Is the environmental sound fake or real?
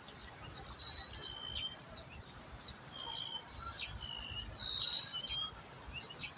real